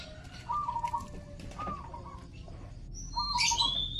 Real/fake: real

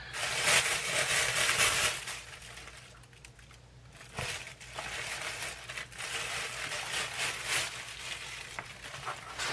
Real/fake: real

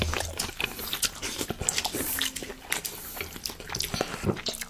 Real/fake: fake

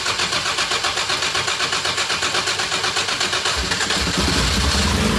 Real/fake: real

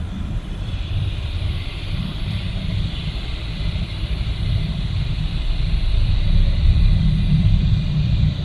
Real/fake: fake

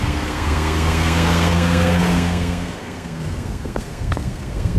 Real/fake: fake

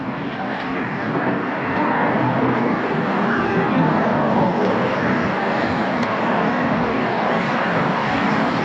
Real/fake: fake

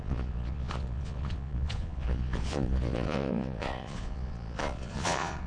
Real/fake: fake